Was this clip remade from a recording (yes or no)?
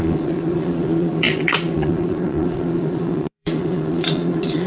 yes